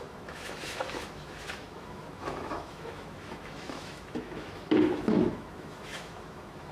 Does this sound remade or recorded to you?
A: remade